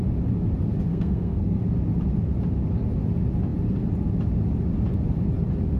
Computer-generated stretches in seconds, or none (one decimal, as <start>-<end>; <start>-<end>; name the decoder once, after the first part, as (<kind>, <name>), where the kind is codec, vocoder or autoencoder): 0.9-1.6 (codec, SNAC)